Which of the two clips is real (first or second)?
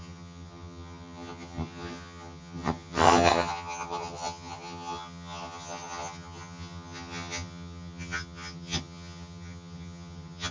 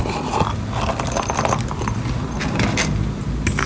second